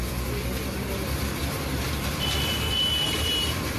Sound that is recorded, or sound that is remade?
remade